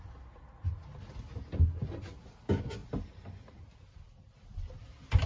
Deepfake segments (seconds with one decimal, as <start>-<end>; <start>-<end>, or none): none